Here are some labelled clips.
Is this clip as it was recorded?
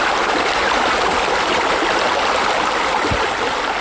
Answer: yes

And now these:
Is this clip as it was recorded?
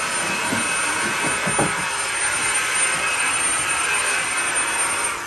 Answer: yes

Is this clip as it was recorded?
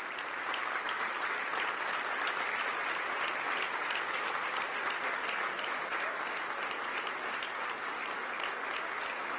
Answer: yes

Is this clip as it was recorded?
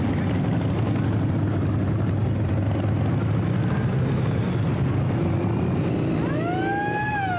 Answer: yes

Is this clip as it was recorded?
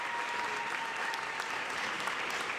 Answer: yes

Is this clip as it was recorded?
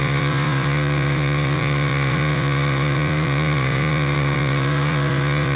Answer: no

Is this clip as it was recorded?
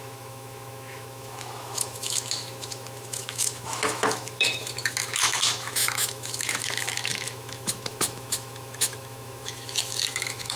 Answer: no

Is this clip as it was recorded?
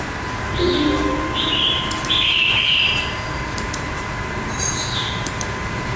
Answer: no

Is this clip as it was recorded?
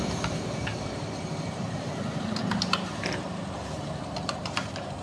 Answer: no